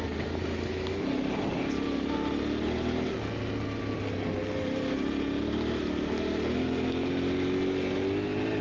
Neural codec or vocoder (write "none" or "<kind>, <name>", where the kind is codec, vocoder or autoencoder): none